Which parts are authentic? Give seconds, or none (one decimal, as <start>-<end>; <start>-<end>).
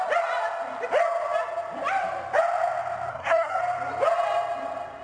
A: 0.0-3.1; 3.6-5.0